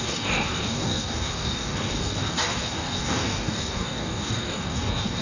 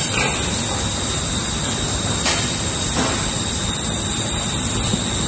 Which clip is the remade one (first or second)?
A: first